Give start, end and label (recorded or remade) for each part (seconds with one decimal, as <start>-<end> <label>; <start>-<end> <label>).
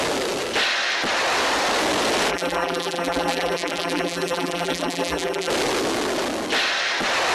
0.0-2.3 recorded; 2.3-5.5 remade; 5.5-7.3 recorded